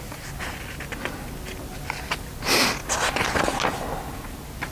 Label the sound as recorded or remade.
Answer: recorded